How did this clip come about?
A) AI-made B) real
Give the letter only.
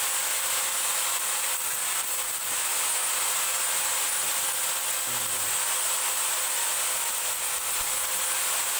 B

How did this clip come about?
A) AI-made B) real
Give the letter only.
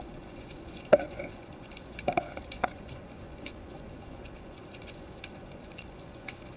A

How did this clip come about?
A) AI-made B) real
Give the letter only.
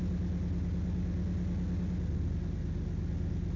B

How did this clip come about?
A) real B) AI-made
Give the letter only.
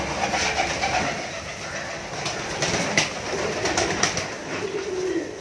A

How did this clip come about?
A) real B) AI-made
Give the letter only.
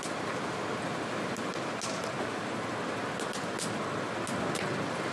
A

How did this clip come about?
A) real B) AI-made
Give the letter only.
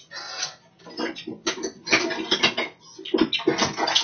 A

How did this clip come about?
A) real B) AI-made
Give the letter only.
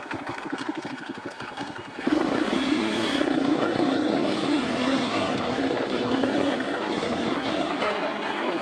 B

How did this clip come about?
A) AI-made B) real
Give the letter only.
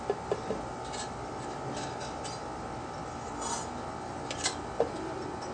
B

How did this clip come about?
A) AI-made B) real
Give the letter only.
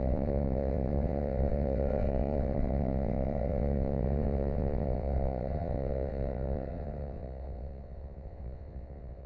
A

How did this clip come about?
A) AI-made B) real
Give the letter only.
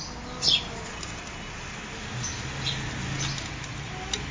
B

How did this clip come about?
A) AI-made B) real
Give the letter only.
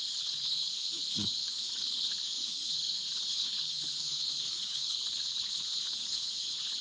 A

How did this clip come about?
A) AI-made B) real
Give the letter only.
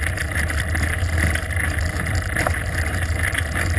B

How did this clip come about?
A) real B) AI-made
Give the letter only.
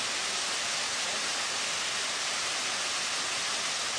A